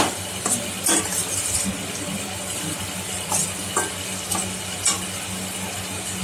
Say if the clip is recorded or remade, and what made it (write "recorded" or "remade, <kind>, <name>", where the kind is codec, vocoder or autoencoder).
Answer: recorded